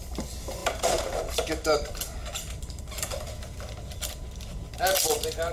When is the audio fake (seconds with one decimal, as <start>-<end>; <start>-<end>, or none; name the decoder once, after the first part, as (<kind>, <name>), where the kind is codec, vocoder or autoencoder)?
none